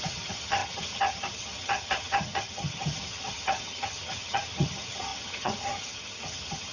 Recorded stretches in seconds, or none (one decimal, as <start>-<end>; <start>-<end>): none